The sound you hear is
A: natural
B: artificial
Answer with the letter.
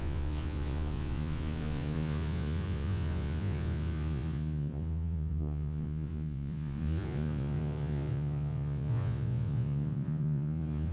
B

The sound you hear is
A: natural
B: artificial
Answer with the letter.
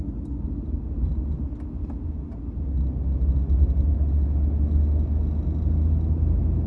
A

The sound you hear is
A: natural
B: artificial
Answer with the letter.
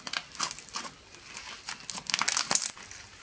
A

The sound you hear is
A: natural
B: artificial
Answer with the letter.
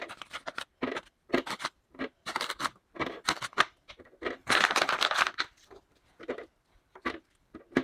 B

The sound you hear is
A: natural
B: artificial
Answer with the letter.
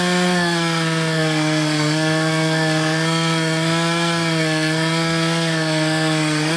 B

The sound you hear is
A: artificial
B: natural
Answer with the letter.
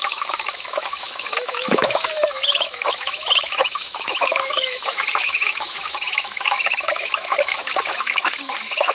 A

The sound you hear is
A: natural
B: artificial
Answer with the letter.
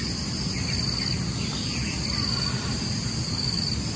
A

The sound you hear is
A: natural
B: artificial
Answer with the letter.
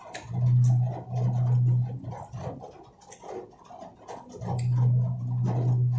A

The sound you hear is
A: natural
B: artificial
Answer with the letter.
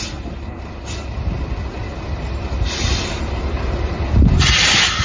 A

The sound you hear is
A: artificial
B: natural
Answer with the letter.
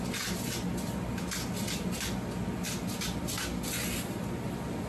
B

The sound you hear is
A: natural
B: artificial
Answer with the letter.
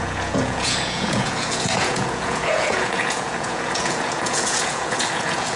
B